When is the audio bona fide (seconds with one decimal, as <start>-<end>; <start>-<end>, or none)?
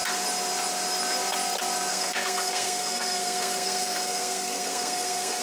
0.0-1.9